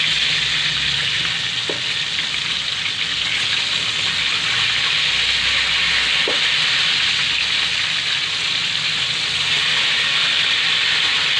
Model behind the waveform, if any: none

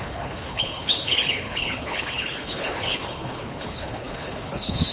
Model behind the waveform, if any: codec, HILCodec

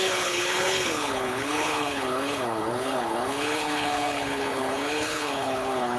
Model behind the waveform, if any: codec, HILCodec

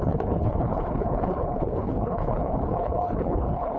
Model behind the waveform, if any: codec, HILCodec